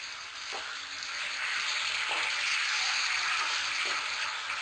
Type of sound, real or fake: real